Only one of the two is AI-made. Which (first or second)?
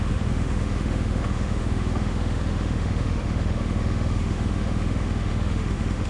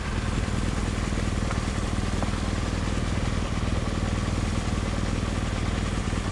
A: first